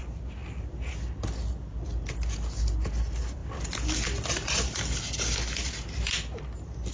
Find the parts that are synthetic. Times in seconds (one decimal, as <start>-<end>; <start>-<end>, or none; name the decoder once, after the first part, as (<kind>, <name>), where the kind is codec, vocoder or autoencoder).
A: none